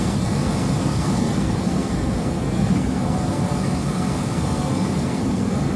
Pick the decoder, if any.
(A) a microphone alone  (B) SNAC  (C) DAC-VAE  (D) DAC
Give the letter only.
B